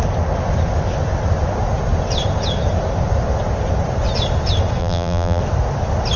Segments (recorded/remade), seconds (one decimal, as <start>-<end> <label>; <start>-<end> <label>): 0.0-4.8 recorded; 4.8-5.4 remade; 5.4-6.2 recorded